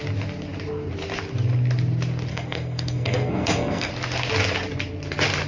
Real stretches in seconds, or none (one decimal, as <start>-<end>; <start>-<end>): 0.0-2.3; 3.9-5.5